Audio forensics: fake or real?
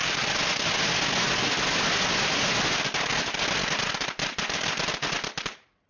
real